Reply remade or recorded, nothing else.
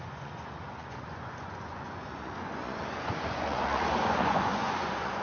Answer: remade